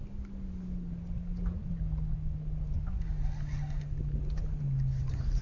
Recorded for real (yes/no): yes